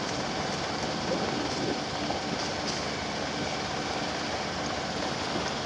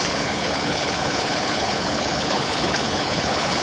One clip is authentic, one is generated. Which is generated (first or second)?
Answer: second